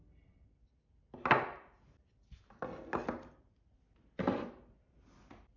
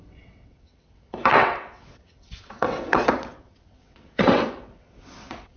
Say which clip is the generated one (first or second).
second